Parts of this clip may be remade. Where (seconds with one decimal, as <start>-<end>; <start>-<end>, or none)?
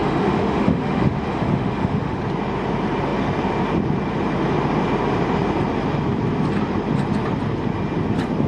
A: 0.0-2.2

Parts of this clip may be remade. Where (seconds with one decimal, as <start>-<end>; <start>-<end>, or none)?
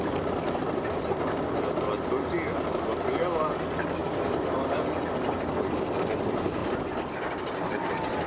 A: 0.0-4.0; 5.3-6.6; 7.1-8.3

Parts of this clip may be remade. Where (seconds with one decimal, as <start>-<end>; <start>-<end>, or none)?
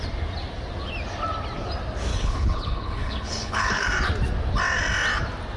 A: 2.1-3.9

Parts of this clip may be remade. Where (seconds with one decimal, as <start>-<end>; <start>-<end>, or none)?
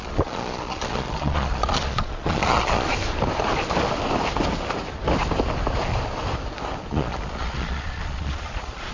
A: 0.0-2.9; 6.9-8.9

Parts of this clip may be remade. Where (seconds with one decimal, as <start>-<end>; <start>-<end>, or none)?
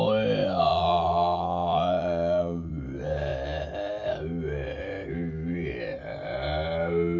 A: 0.7-2.7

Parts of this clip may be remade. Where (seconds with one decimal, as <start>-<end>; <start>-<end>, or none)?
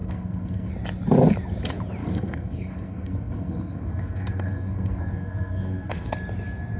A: 0.0-0.7; 2.0-6.1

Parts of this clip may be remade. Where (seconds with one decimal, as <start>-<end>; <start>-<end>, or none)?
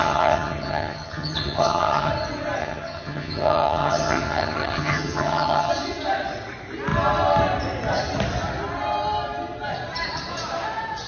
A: 0.0-2.1; 2.6-5.7